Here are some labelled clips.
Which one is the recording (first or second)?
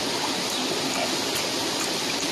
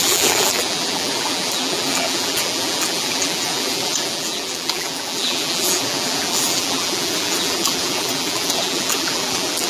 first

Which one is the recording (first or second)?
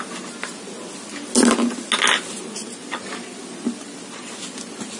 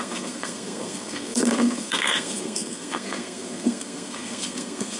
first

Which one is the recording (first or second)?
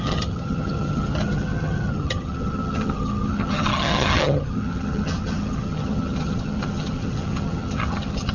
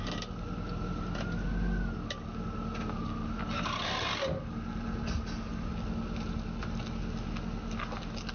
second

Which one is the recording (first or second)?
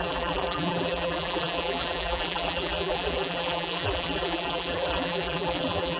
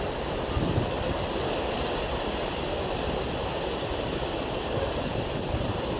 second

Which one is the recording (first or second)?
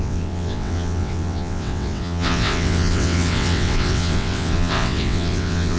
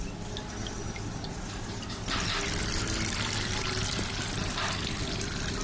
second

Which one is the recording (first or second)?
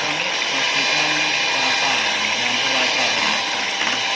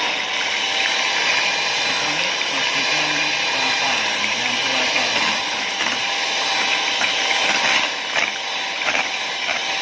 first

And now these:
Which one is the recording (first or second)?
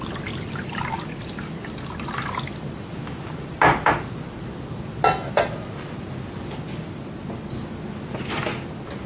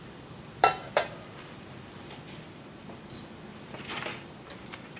first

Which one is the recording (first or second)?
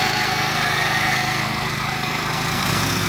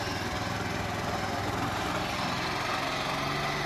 second